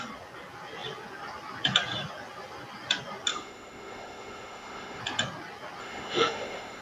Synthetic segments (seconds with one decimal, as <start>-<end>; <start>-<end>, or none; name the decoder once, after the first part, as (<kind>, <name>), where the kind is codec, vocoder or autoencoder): 3.3-5.0 (autoencoder, DAC-VAE); 5.8-6.8